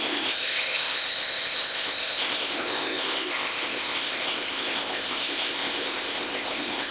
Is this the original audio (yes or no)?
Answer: no